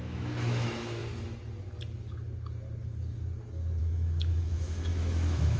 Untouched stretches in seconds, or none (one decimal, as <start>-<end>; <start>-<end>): 1.0-3.8